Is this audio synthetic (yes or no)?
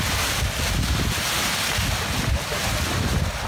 no